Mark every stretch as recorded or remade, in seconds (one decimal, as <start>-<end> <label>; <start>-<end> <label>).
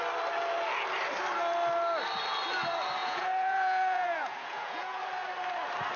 0.0-3.0 recorded; 3.0-5.0 remade; 5.0-6.0 recorded